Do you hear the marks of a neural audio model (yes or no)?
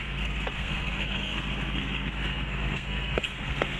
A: yes